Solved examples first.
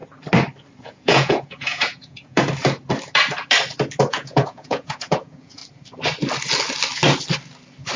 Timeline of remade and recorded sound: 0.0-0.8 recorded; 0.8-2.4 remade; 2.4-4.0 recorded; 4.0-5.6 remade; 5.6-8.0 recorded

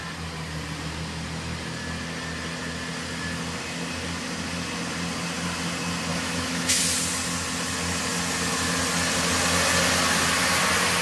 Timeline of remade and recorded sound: 0.0-6.1 recorded; 6.1-6.8 remade; 6.8-11.0 recorded

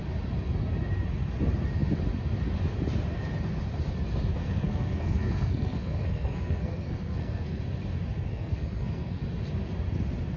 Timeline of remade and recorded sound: 0.0-4.4 recorded; 4.4-7.6 remade; 7.6-8.3 recorded; 8.3-9.2 remade; 9.2-10.4 recorded

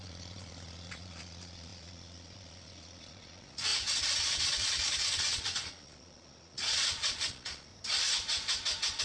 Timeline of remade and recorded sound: 0.0-3.7 remade; 3.7-4.2 recorded; 4.2-7.7 remade; 7.7-9.0 recorded

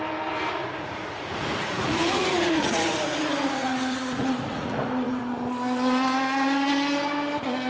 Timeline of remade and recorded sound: 0.0-0.6 recorded; 0.6-5.2 remade; 5.2-7.7 recorded

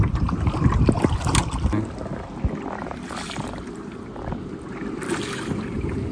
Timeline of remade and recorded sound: 0.0-1.4 remade; 1.4-5.1 recorded; 5.1-6.1 remade

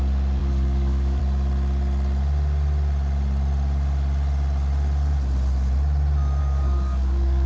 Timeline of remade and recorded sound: 0.0-0.4 recorded; 0.4-1.2 remade; 1.2-6.4 recorded; 6.4-7.5 remade